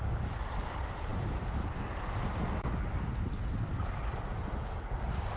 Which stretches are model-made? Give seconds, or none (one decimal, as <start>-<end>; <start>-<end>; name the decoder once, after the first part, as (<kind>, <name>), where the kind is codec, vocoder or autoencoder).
0.0-2.3 (vocoder, BigVGAN v2); 3.7-4.3